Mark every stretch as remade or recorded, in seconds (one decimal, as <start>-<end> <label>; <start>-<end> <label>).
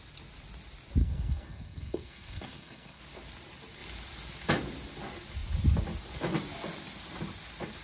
0.0-1.0 recorded; 1.0-3.0 remade; 3.0-7.8 recorded